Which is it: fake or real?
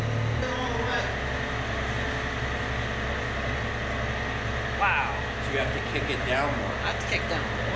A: real